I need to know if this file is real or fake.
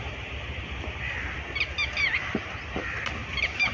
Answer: real